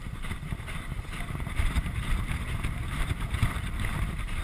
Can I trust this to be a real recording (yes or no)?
no